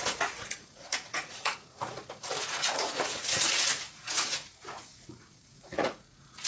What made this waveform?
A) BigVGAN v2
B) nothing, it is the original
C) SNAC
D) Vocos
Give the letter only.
D